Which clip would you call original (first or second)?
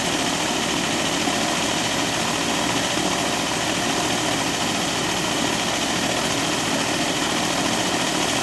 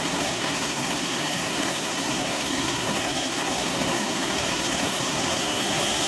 first